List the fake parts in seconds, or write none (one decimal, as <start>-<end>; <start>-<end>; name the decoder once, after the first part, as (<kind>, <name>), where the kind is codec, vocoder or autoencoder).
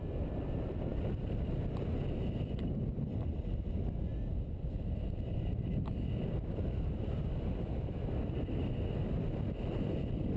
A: 0.0-4.1 (vocoder, BigVGAN v2); 9.1-10.4